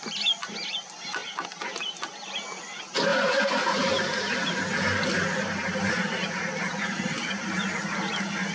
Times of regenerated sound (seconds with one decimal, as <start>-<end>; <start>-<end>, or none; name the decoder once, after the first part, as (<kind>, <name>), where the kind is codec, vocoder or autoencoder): 3.1-4.7 (vocoder, BigVGAN v2)